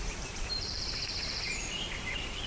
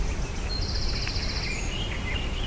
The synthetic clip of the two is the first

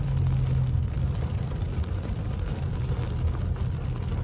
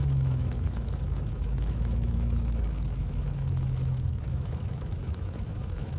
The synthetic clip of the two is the second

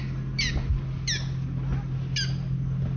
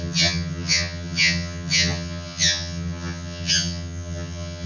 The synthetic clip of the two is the second